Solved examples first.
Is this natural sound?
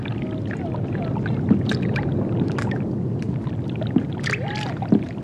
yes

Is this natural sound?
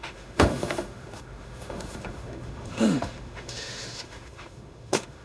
no